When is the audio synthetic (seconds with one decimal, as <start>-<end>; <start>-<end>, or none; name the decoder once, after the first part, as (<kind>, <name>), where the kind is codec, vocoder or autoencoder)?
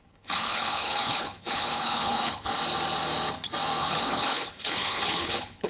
0.0-2.5 (codec, HILCodec); 3.8-5.7